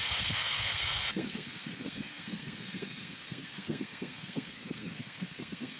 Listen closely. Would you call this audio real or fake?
fake